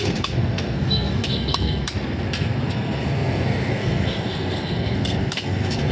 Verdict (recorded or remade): remade